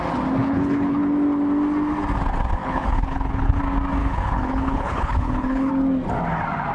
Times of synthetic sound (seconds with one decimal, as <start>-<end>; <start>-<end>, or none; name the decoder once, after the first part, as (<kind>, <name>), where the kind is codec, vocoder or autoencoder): 0.4-1.0 (codec, HILCodec); 2.6-3.6; 4.0-5.7

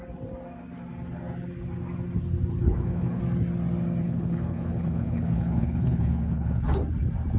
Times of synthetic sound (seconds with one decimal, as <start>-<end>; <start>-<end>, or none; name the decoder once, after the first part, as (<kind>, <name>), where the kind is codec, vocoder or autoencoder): 2.5-3.2 (codec, HILCodec); 4.0-6.6

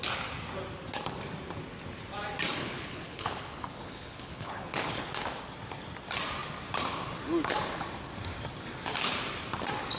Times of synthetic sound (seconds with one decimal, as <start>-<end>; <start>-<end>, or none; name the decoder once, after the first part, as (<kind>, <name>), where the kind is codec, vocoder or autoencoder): 2.6-5.1 (codec, HILCodec)